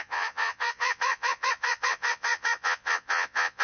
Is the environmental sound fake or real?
fake